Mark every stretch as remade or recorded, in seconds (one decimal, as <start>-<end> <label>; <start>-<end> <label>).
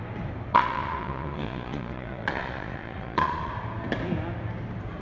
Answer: 0.0-0.5 recorded; 0.5-3.5 remade; 3.5-5.0 recorded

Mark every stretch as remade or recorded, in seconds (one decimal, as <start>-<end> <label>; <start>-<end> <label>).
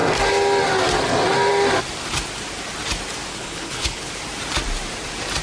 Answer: 0.0-3.3 recorded; 3.3-4.1 remade; 4.1-5.4 recorded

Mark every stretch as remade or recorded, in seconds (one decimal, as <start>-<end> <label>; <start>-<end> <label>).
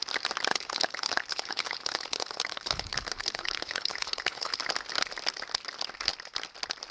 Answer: 0.0-0.5 recorded; 0.5-4.6 remade; 4.6-6.9 recorded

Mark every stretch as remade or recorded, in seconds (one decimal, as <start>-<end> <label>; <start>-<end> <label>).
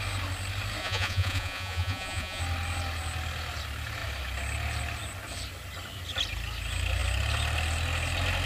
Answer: 0.0-0.8 recorded; 0.8-2.4 remade; 2.4-8.5 recorded